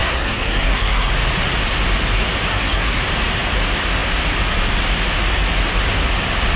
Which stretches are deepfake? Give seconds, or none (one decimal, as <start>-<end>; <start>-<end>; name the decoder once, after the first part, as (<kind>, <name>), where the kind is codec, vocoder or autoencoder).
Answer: 0.0-1.1 (codec, SNAC); 2.5-3.0

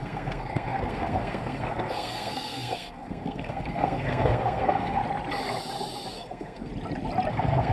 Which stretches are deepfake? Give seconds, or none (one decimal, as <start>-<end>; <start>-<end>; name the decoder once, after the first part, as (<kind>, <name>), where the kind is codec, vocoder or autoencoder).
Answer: 0.0-5.0 (codec, SNAC); 6.1-6.7; 7.3-7.7

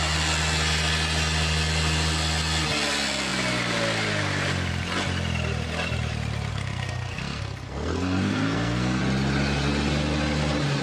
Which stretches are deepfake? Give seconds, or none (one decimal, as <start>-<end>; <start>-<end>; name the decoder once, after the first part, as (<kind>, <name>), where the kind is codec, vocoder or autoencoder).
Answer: 6.5-9.0 (codec, SNAC)

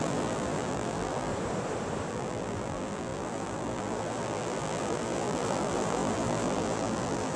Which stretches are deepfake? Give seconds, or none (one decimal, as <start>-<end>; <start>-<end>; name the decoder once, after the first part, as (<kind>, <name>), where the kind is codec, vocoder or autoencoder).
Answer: 0.0-1.3 (vocoder, BigVGAN v2); 2.1-7.4

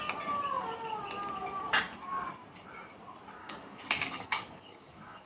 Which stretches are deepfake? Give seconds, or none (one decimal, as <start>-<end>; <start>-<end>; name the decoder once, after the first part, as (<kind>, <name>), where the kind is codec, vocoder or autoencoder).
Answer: 3.4-5.3 (codec, DAC)

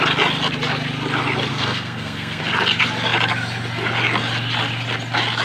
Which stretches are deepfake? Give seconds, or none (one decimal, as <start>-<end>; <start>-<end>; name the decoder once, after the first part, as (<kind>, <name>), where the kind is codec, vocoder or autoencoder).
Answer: 1.5-2.4 (codec, SNAC)